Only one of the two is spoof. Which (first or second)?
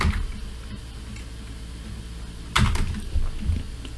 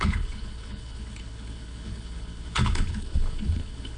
second